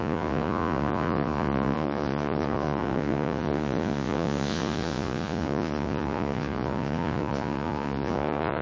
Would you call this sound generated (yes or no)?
yes